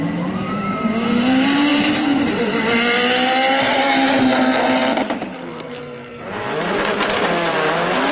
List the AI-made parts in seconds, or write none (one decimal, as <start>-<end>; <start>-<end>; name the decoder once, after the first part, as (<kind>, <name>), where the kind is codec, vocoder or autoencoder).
0.0-1.7 (vocoder, BigVGAN v2); 3.5-8.1

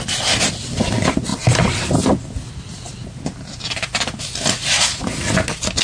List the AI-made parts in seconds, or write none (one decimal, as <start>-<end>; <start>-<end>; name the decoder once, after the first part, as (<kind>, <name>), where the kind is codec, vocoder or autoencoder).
none

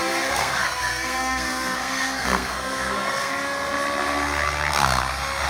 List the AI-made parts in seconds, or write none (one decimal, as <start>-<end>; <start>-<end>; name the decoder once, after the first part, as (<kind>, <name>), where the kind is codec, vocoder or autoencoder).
0.0-3.3 (codec, SNAC)

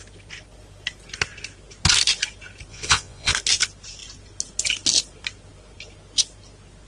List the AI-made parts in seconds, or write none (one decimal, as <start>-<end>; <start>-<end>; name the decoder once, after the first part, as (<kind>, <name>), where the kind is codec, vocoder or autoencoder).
2.7-3.3 (vocoder, Vocos)

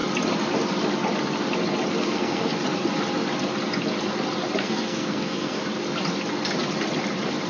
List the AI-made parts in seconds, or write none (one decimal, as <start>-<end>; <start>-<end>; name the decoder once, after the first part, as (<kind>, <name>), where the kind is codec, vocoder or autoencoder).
2.0-2.5 (codec, SNAC); 4.6-5.6